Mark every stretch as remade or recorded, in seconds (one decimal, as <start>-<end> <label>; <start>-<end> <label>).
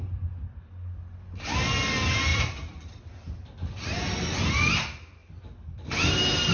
0.0-2.3 recorded; 2.3-4.5 remade; 4.5-5.2 recorded; 5.2-6.1 remade; 6.1-6.5 recorded